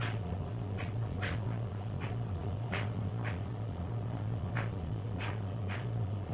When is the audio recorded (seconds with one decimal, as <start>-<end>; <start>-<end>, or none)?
none